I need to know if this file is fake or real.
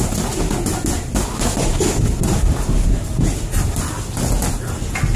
real